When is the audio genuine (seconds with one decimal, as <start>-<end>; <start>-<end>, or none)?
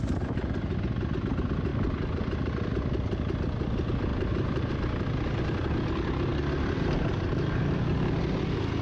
0.0-4.1; 4.7-8.8